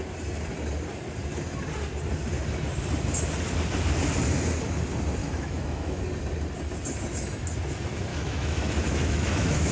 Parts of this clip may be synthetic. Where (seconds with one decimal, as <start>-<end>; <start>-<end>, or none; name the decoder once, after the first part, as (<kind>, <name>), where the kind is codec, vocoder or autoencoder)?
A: 5.2-6.0 (autoencoder, DAC-VAE); 8.1-9.7